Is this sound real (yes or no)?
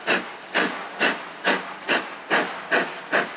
yes